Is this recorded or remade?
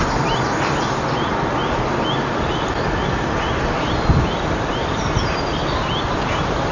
recorded